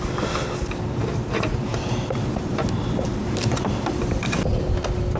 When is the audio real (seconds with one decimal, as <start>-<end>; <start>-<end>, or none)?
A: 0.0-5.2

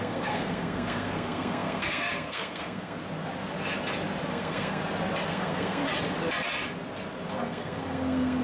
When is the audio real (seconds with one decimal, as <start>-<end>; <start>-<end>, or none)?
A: 3.0-4.3; 4.8-5.3; 5.8-7.3

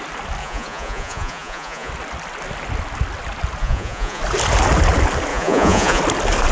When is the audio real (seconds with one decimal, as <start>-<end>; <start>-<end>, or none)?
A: 0.0-0.4; 1.9-3.6; 4.2-5.3; 6.0-6.5